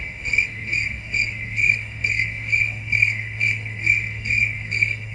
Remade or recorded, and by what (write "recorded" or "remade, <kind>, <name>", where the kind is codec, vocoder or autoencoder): remade, codec, SNAC